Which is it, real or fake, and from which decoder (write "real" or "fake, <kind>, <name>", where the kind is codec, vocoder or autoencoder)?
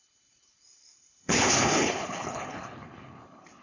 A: fake, codec, HILCodec